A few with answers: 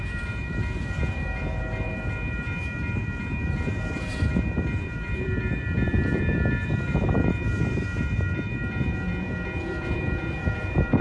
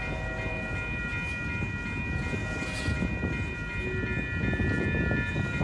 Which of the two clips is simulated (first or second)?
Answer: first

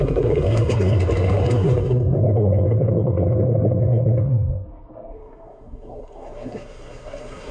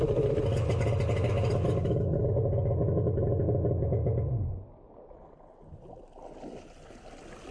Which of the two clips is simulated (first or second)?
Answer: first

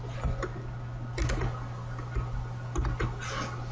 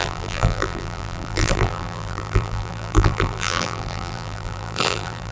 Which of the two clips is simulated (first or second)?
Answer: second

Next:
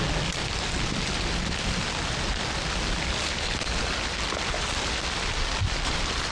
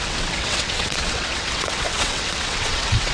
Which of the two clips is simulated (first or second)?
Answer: second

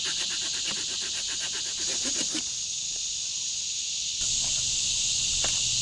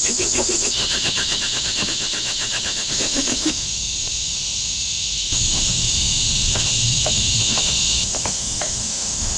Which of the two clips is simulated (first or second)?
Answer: second